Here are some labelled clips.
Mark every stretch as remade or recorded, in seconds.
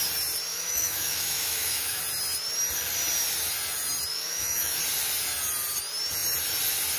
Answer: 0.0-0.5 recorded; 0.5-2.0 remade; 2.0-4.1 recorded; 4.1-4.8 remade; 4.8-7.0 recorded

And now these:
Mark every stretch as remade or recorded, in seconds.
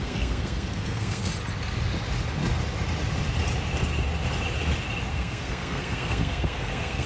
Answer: 0.0-1.3 remade; 1.3-5.1 recorded; 5.1-7.1 remade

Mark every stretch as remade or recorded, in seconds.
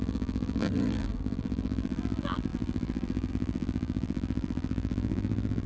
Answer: 0.0-5.7 remade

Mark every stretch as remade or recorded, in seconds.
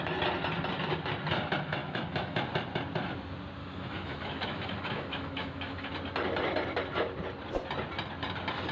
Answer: 0.0-1.8 recorded; 1.8-2.4 remade; 2.4-3.6 recorded; 3.6-5.9 remade; 5.9-8.7 recorded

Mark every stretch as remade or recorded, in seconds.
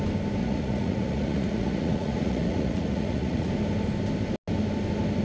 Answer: 0.0-0.4 recorded; 0.4-3.5 remade; 3.5-5.2 recorded